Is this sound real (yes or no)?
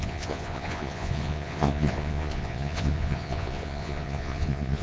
no